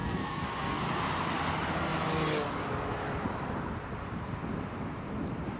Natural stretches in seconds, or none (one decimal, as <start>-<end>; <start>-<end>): 0.8-5.6